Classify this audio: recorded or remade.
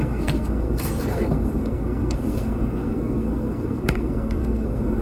remade